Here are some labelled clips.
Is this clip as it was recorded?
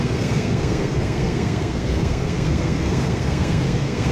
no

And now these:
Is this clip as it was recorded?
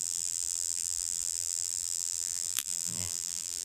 no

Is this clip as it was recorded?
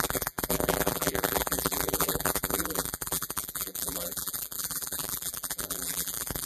no